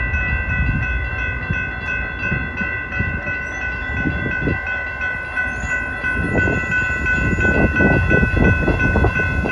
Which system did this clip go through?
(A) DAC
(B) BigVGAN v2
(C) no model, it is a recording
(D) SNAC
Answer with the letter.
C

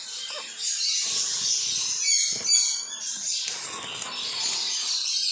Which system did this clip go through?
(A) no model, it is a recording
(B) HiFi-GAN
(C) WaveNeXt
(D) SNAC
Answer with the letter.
A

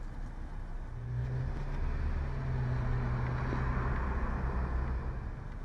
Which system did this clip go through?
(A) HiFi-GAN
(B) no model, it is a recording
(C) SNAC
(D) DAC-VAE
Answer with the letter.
B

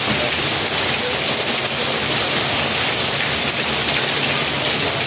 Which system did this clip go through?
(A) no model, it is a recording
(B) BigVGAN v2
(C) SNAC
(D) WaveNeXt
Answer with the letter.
A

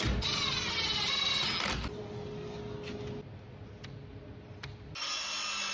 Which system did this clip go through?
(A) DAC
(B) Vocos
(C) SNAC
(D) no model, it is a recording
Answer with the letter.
D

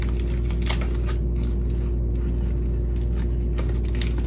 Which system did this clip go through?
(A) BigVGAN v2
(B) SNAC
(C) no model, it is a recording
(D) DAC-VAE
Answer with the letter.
C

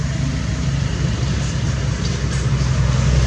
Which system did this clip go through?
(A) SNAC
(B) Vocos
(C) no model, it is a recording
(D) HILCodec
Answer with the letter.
C